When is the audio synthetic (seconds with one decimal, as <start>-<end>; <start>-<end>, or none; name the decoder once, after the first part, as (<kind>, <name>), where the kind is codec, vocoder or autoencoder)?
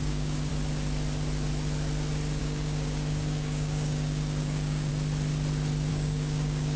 0.0-0.5 (codec, DAC); 2.4-4.9; 5.9-6.8